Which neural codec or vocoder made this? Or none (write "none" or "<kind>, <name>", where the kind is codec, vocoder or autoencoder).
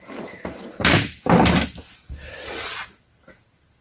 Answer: none